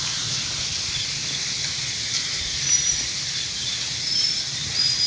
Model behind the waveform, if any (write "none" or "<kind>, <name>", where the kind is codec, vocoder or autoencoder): none